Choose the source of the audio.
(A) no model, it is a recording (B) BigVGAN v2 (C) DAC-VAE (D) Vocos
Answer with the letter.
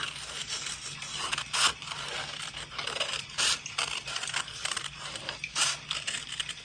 A